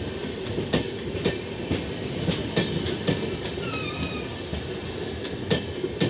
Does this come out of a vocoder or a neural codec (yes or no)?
no